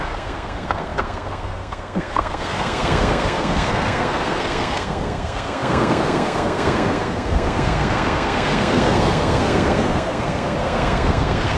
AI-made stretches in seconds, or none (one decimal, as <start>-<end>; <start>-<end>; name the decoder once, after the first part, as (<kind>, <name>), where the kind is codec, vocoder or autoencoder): 0.0-11.6 (codec, SNAC)